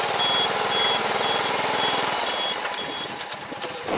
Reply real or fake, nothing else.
real